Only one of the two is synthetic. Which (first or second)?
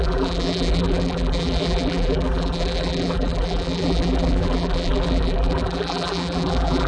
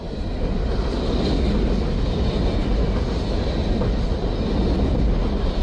first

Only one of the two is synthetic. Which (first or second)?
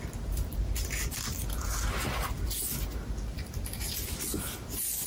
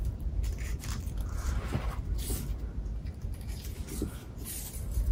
second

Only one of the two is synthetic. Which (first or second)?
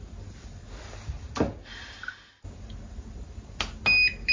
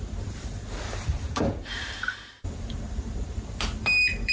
second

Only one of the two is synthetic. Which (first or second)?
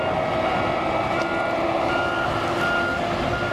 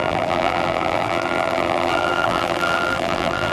second